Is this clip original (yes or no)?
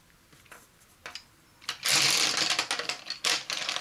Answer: yes